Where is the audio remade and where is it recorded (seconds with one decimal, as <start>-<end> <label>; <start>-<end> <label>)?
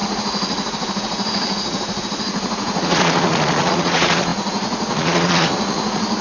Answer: 0.0-6.2 remade